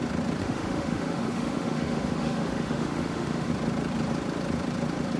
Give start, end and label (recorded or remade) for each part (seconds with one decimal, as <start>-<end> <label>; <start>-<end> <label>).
0.0-0.4 recorded; 0.4-3.5 remade; 3.5-5.2 recorded